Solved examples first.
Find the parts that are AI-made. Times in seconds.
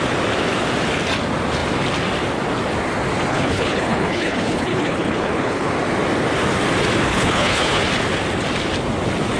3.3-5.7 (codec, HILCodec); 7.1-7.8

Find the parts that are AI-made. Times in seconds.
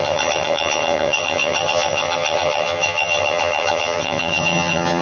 0.0-5.0 (vocoder, HiFi-GAN)